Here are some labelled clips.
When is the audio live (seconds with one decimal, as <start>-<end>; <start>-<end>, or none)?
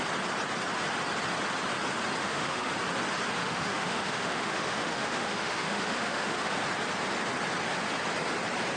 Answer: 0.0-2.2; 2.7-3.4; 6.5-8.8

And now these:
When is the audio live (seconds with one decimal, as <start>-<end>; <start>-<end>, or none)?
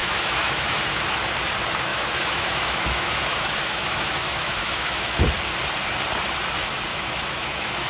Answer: 0.8-1.9; 5.2-6.9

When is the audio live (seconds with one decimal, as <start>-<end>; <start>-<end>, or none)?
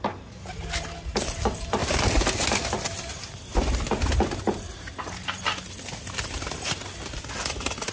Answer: 0.0-7.9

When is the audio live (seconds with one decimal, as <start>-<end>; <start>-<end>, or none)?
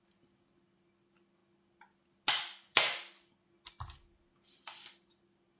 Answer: 0.0-5.6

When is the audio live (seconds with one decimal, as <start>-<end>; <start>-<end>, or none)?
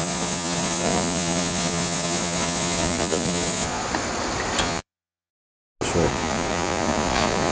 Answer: 3.8-4.6; 5.3-6.1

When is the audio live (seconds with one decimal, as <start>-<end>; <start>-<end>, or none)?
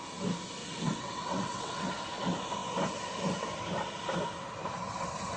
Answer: 0.0-0.6; 1.9-5.4